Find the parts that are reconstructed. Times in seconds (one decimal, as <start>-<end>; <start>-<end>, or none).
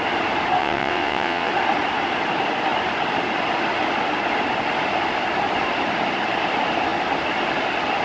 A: 0.6-1.5